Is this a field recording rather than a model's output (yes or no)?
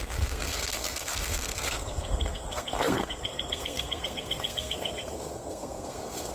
no